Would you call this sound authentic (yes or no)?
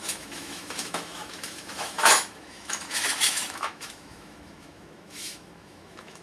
no